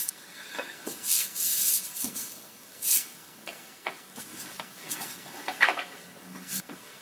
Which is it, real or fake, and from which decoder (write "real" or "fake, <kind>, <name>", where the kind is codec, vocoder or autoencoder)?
fake, codec, SNAC